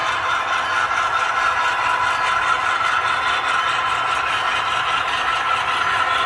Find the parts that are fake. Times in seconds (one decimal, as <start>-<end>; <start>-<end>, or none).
none